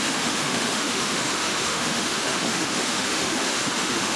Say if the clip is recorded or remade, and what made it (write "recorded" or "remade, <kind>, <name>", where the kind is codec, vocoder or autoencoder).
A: remade, autoencoder, DAC-VAE